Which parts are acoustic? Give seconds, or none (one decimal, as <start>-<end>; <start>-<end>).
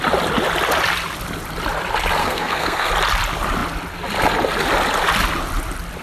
0.0-2.2; 2.9-6.0